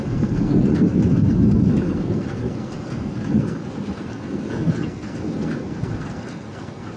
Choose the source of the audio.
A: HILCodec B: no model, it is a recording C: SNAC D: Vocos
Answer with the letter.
C